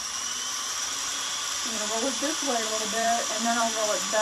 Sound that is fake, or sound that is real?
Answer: fake